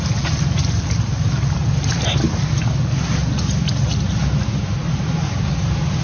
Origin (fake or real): real